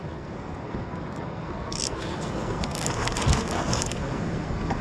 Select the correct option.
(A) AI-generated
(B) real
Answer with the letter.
A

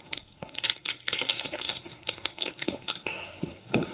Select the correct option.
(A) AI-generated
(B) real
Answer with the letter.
A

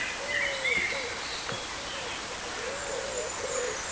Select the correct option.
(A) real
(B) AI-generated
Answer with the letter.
A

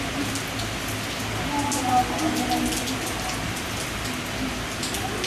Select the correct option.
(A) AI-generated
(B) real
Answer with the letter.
B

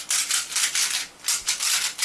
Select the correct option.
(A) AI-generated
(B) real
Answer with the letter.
A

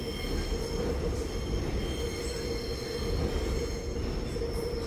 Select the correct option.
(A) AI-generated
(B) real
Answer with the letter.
B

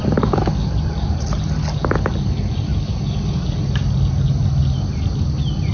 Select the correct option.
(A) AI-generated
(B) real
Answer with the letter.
B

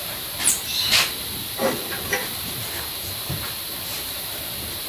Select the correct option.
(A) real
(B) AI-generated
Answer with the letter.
B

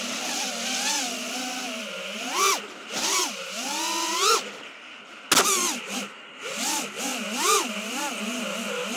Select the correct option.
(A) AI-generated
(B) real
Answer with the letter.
B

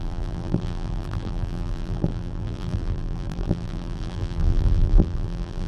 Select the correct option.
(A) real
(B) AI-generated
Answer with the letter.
B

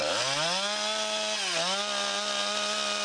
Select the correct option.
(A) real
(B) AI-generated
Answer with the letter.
A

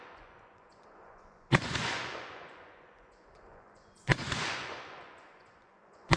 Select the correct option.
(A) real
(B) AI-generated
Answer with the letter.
B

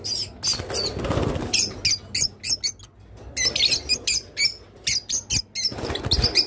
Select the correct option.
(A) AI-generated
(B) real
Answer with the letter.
B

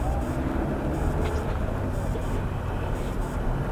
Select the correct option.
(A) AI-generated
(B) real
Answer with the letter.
B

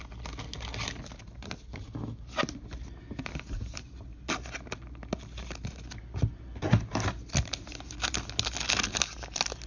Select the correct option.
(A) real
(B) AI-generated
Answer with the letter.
A